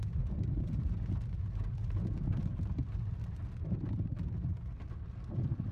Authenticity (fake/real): real